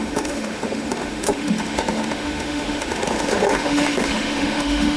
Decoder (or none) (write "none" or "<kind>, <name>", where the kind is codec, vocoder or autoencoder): autoencoder, DAC-VAE